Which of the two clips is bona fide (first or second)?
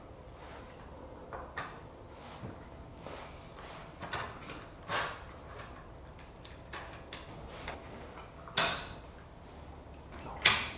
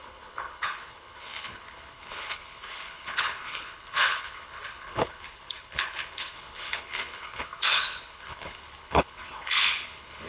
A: first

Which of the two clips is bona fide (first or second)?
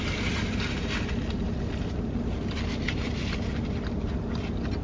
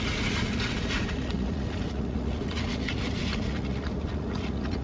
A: first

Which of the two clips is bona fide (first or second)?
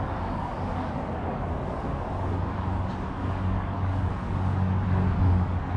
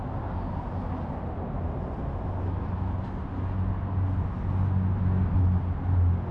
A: second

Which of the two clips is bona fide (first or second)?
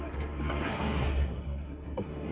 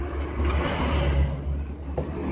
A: second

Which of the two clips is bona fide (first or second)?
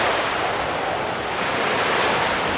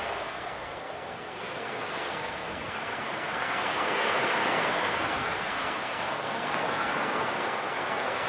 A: first